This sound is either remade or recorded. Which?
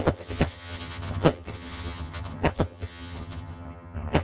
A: remade